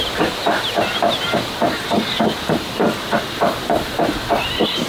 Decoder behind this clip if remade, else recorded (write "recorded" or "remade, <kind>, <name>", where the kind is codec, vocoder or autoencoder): recorded